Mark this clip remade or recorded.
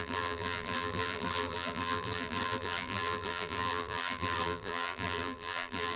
remade